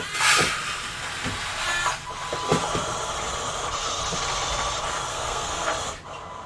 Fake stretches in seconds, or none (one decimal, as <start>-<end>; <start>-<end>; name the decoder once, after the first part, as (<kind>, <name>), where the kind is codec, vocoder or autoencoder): 5.1-5.7 (codec, SNAC)